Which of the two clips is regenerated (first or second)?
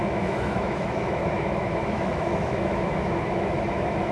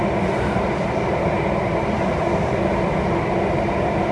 first